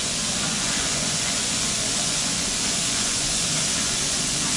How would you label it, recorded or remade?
remade